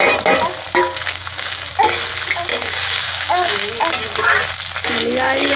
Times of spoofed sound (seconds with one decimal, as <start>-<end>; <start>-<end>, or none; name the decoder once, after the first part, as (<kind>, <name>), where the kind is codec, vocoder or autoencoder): 0.8-1.7 (codec, DAC); 2.5-3.7